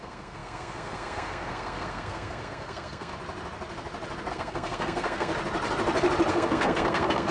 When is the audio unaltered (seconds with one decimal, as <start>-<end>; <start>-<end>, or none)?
3.1-4.3; 5.3-6.3